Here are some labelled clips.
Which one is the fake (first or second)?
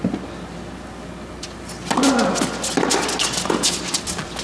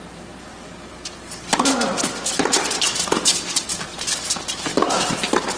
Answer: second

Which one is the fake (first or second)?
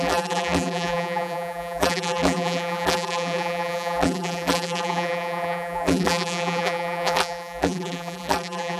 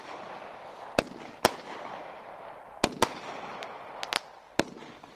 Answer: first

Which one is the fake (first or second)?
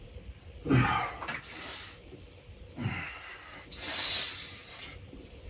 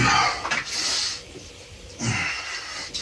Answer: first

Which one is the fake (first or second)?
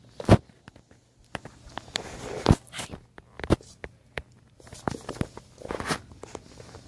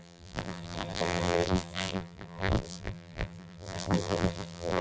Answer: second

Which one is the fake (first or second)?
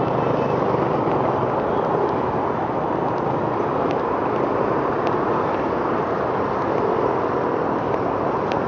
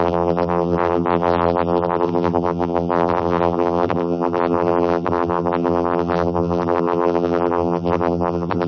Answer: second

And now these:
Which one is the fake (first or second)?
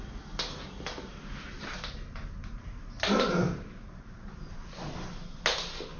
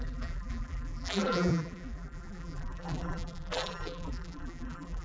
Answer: second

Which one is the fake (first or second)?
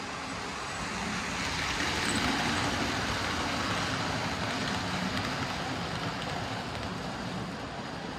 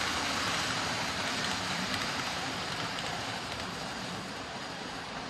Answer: second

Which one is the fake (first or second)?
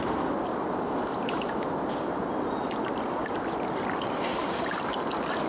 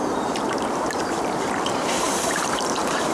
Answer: second